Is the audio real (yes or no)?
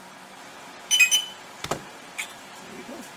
yes